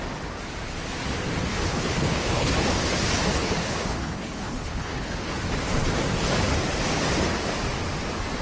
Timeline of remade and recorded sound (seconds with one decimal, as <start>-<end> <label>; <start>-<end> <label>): 0.0-1.5 recorded; 1.5-2.5 remade; 2.5-3.3 recorded; 3.3-5.3 remade; 5.3-8.4 recorded